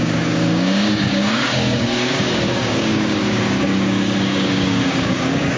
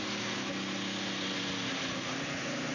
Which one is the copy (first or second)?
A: first